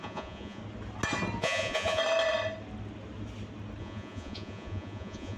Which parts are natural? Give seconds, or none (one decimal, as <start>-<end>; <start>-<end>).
0.6-1.4; 2.0-3.8